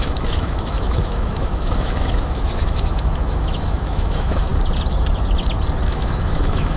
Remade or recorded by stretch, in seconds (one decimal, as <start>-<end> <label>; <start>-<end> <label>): 0.0-4.5 remade; 4.5-5.9 recorded; 5.9-6.8 remade